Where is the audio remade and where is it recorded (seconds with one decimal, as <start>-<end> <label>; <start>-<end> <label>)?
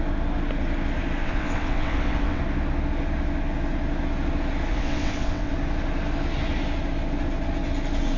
0.0-1.2 recorded; 1.2-2.4 remade; 2.4-4.7 recorded; 4.7-5.5 remade; 5.5-8.2 recorded